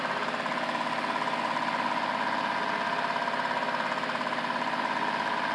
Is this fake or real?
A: real